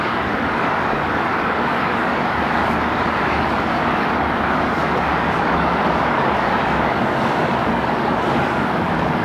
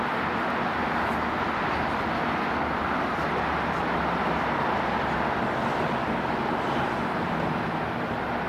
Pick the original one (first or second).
second